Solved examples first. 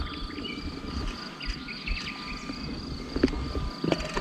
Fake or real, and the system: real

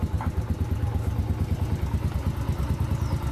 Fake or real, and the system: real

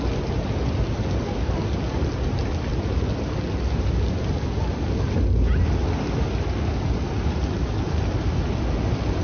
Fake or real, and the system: real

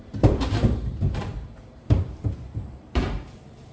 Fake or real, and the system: fake, vocoder, BigVGAN v2